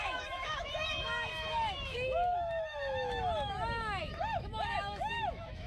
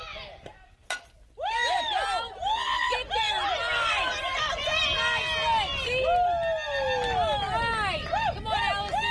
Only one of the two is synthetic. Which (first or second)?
first